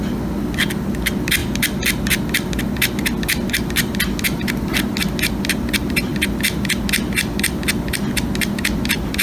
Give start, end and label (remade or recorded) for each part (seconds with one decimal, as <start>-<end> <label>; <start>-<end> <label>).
0.0-9.2 recorded